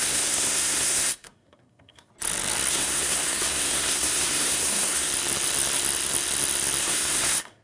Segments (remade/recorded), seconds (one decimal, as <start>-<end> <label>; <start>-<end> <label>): 0.0-2.1 remade; 2.1-2.7 recorded; 2.7-5.1 remade; 5.1-6.8 recorded; 6.8-7.6 remade